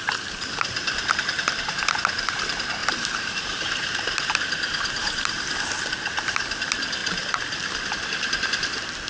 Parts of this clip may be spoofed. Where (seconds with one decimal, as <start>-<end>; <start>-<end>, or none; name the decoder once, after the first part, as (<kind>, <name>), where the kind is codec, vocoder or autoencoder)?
2.8-5.6 (vocoder, BigVGAN v2)